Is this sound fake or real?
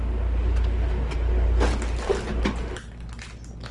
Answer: real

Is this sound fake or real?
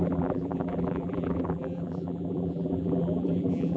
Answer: fake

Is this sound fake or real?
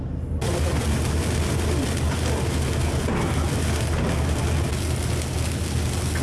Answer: real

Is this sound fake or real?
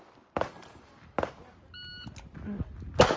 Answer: real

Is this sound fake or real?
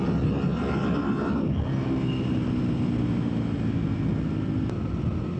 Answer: real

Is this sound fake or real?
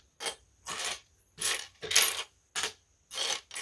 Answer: real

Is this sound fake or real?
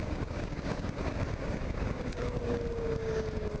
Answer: fake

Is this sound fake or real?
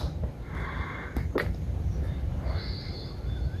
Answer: real